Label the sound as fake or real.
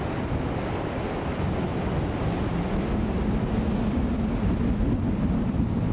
real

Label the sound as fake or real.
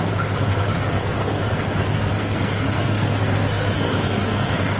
fake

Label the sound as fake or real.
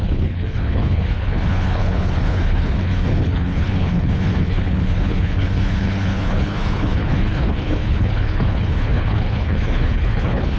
fake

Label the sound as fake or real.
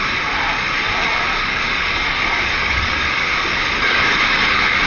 fake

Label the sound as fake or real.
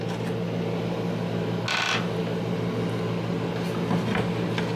real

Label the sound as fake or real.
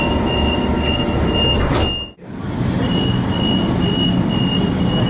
real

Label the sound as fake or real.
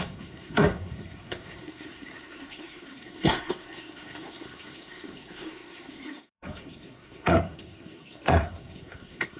fake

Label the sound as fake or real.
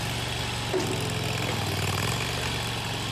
real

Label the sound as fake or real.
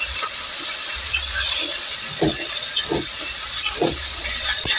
fake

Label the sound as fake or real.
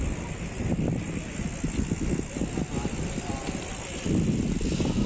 real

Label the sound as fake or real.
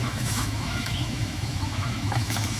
fake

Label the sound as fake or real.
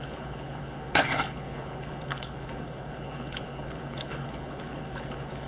fake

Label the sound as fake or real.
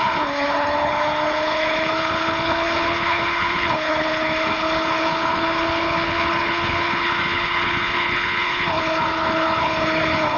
fake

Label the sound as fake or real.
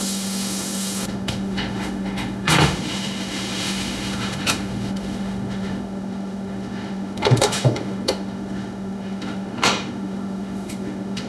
fake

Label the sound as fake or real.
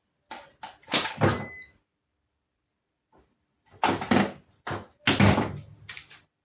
real